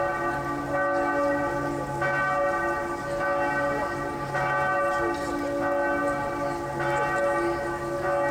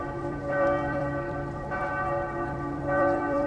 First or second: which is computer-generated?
second